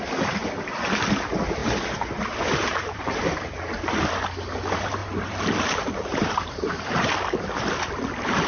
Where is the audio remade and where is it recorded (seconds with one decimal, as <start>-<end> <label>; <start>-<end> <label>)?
0.0-1.6 recorded; 1.6-3.3 remade; 3.3-5.0 recorded; 5.0-7.1 remade; 7.1-8.5 recorded